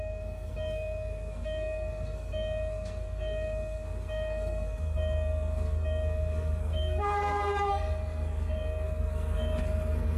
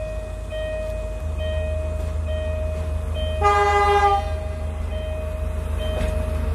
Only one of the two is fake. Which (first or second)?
first